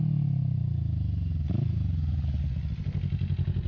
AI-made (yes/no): no